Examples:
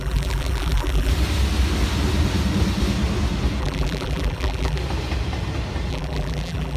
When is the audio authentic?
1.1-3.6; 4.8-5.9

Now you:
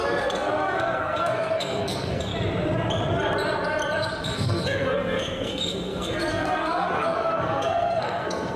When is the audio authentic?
2.3-4.2

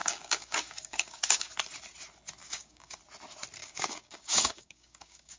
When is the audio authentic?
1.5-2.4; 3.0-3.6

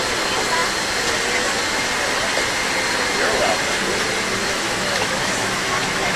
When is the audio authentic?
0.0-4.4

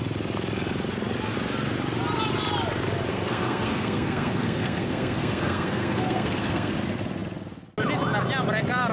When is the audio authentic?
0.0-3.1; 6.7-8.9

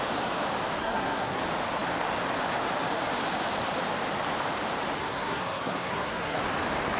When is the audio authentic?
0.0-0.8; 1.4-5.0; 6.4-7.0

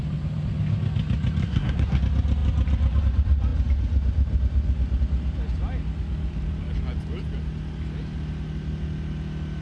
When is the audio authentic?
0.0-1.4; 2.0-9.6